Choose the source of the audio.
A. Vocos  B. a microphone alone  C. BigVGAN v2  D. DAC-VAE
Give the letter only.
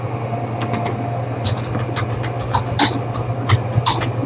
B